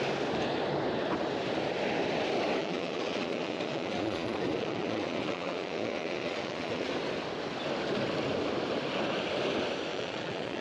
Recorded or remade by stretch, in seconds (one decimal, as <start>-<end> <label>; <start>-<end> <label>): 0.0-2.6 recorded; 2.6-6.9 remade; 6.9-9.9 recorded; 9.9-10.6 remade